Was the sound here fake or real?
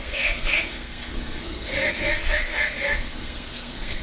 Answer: fake